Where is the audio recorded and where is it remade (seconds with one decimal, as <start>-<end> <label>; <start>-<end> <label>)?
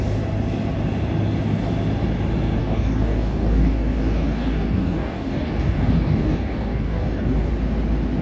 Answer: 0.0-2.6 recorded; 2.6-7.5 remade; 7.5-8.2 recorded